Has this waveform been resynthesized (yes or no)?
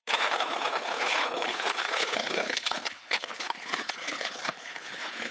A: yes